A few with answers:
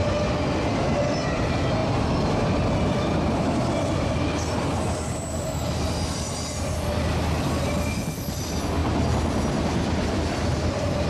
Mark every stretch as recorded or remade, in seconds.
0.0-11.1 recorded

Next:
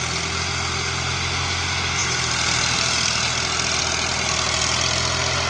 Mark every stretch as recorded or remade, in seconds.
0.0-5.5 recorded